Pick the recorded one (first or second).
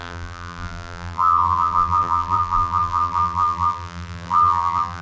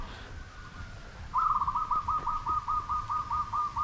second